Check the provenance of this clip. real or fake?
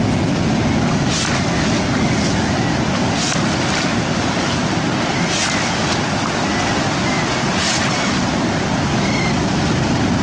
real